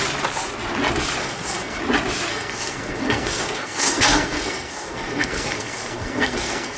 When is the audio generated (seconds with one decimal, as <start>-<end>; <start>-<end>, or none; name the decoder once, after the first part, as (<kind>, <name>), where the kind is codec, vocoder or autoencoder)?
1.2-1.8 (codec, SNAC); 2.3-6.8